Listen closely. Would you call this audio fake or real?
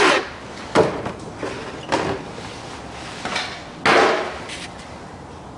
real